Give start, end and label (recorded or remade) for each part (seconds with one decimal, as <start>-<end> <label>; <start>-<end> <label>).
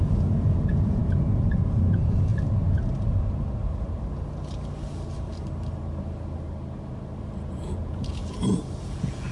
0.0-2.3 remade; 2.3-7.5 recorded; 7.5-8.2 remade; 8.2-8.9 recorded; 8.9-9.3 remade